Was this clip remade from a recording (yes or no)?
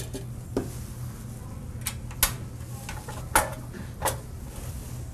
no